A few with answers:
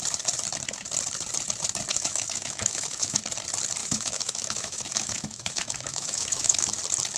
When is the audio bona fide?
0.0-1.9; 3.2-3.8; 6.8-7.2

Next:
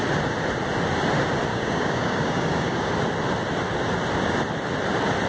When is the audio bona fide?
0.0-1.5; 2.9-5.3

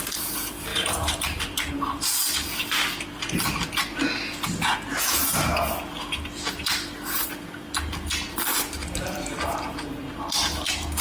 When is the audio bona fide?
0.0-0.7; 1.7-11.0

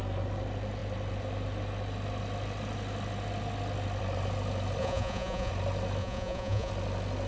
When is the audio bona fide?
0.0-4.8; 5.5-6.0; 6.7-7.3